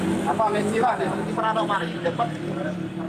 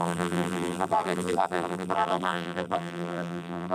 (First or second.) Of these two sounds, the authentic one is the first